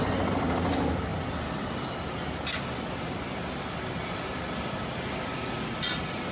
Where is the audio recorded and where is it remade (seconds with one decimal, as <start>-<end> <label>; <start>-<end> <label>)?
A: 0.0-6.3 recorded